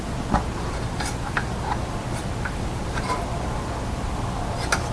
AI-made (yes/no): no